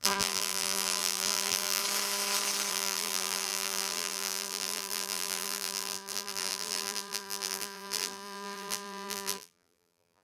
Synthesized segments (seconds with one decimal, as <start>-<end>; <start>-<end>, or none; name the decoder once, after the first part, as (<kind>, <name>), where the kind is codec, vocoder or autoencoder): 0.0-1.8 (vocoder, BigVGAN v2); 2.7-10.2